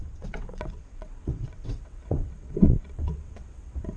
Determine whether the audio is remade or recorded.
remade